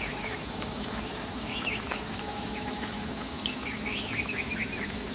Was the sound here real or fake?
fake